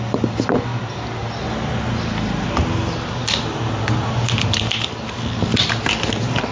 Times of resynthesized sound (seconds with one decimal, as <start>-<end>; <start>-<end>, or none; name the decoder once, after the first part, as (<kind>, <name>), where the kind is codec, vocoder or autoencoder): none